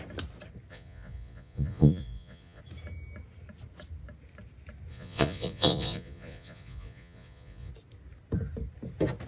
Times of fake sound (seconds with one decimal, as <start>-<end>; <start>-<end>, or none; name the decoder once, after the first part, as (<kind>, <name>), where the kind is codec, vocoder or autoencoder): 0.7-2.6 (vocoder, Vocos); 4.9-7.7